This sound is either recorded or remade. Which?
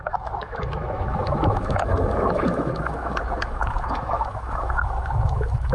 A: remade